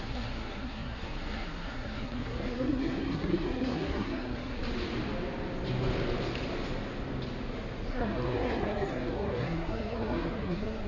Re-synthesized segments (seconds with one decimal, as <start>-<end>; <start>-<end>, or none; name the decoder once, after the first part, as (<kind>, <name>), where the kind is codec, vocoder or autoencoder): 0.0-4.6 (codec, SNAC); 7.9-10.9